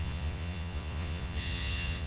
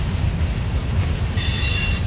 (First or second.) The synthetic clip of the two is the first